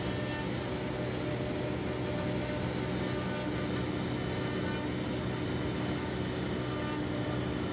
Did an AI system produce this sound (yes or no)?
no